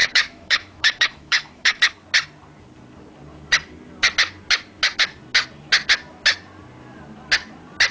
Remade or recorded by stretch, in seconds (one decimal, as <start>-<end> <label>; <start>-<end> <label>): 0.0-1.9 remade; 1.9-7.9 recorded